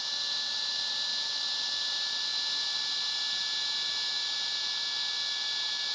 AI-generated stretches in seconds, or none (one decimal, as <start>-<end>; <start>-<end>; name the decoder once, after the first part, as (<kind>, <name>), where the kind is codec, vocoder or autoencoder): none